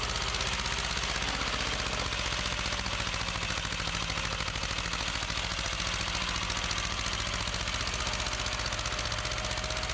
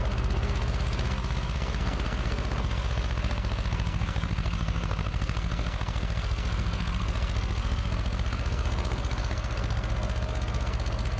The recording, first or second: first